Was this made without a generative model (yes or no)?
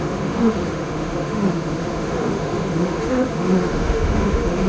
no